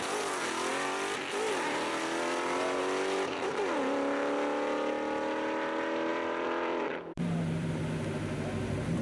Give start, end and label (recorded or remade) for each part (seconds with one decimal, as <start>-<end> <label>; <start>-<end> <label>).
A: 0.0-0.7 recorded; 0.7-3.6 remade; 3.6-6.1 recorded; 6.1-7.8 remade; 7.8-9.0 recorded

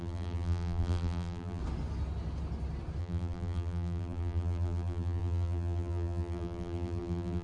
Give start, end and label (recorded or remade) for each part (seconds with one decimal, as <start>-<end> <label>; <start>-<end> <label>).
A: 0.0-1.6 remade; 1.6-3.0 recorded; 3.0-7.4 remade

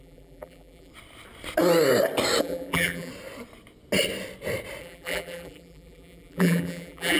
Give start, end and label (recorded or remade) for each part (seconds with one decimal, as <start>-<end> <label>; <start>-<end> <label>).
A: 0.0-0.9 remade; 0.9-2.4 recorded; 2.4-3.1 remade; 3.1-4.8 recorded; 4.8-7.2 remade

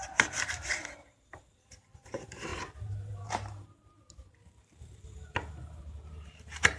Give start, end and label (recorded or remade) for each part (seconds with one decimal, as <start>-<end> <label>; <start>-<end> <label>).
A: 0.0-6.8 remade

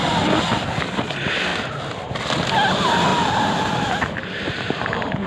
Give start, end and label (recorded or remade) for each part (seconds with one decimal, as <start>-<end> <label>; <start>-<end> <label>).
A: 0.0-1.5 recorded; 1.5-2.1 remade; 2.1-3.1 recorded; 3.1-5.3 remade